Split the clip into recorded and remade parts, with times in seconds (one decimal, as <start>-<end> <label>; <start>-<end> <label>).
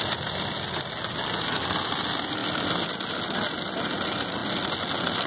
0.0-5.3 recorded